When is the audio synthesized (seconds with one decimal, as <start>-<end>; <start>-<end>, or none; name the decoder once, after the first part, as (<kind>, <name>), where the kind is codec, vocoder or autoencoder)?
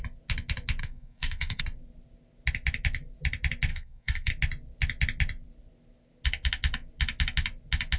0.8-1.6 (codec, SNAC); 3.7-4.3